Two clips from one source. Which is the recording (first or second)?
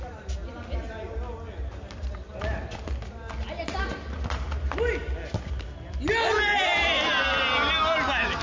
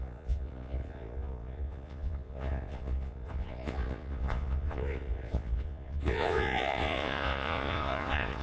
first